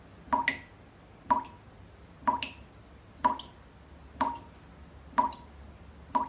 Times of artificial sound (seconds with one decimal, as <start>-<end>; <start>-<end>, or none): none